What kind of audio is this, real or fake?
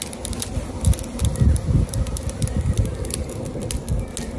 real